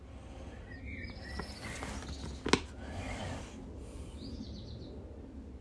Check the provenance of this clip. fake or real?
real